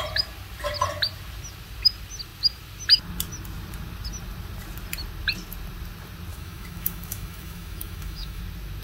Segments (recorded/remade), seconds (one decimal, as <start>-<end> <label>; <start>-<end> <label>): 0.0-6.3 recorded; 6.3-8.4 remade; 8.4-8.8 recorded